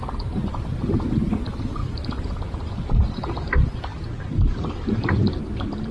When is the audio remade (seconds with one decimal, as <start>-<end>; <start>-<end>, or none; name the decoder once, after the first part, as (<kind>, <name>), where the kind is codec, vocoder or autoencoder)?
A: 0.5-1.3 (vocoder, BigVGAN v2); 1.8-3.3; 3.9-5.9